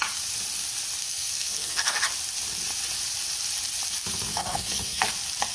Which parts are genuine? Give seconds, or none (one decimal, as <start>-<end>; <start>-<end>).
0.0-1.0; 2.0-4.3; 5.1-5.5